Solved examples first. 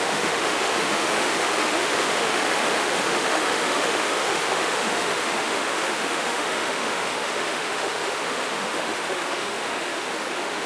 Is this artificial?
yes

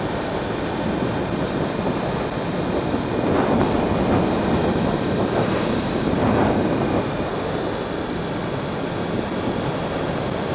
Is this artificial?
no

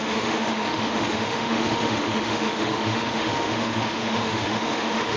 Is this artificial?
yes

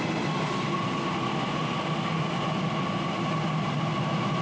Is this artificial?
no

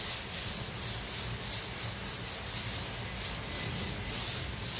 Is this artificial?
no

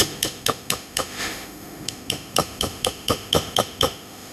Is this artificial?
yes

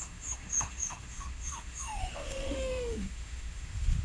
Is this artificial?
yes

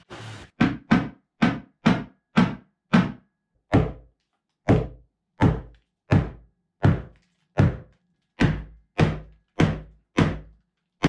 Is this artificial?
no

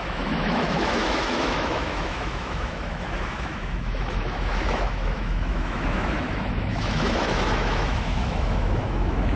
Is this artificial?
yes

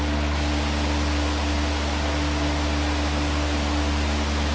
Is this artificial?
no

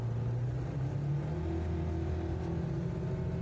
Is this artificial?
no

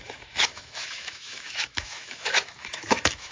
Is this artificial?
yes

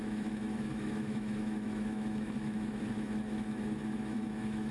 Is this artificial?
yes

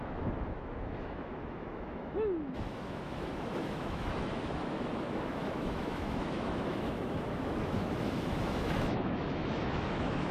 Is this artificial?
yes